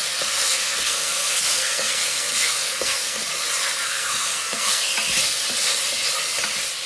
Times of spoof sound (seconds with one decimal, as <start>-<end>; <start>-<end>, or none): 0.0-3.2; 3.6-4.9